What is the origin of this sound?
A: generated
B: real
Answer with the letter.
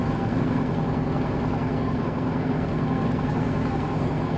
A